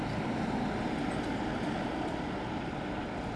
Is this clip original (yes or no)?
yes